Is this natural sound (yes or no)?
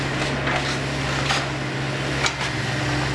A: yes